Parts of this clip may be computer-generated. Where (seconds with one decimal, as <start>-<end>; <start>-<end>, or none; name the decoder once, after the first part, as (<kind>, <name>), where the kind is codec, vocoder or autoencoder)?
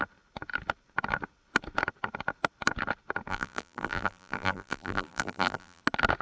3.3-5.8 (vocoder, BigVGAN v2)